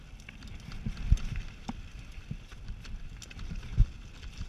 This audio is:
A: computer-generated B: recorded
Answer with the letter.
B